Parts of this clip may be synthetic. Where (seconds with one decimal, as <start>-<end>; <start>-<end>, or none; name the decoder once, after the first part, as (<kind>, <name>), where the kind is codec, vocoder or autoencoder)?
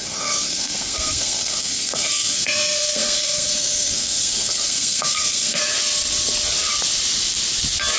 0.0-5.6 (codec, SNAC)